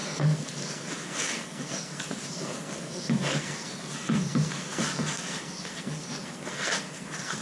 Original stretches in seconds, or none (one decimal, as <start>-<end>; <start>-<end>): none